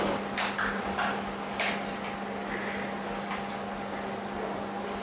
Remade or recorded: recorded